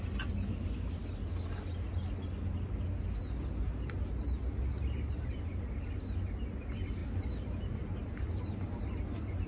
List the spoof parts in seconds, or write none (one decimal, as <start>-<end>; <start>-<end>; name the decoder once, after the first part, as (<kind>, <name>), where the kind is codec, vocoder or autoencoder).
none